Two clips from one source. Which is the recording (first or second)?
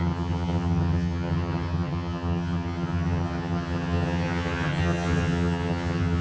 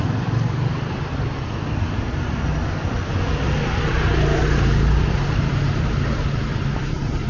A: second